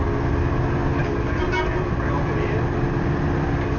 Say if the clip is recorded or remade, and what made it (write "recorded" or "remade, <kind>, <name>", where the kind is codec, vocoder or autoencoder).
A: recorded